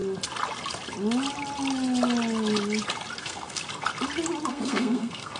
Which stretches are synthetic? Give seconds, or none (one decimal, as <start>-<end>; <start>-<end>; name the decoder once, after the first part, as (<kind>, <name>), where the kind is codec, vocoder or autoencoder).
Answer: 3.2-3.6 (codec, SNAC); 4.5-5.4